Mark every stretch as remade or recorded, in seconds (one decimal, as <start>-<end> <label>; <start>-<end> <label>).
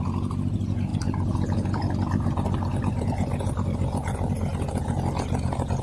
0.0-5.8 recorded